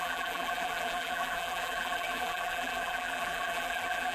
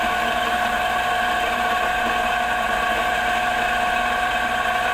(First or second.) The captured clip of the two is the second